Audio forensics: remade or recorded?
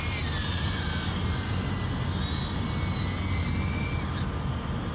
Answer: recorded